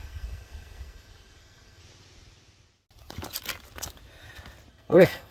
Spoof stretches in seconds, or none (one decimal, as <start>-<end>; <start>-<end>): 0.0-1.8; 4.7-5.3